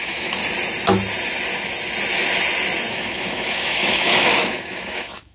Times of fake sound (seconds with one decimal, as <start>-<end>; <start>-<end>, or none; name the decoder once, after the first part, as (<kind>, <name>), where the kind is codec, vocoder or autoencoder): 0.0-0.4 (autoencoder, DAC-VAE); 2.9-5.3